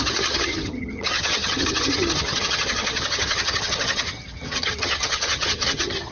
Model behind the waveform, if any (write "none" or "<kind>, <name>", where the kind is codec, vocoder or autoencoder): vocoder, HiFi-GAN